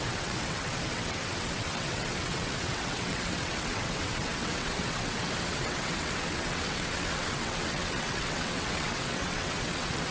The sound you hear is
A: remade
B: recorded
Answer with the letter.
A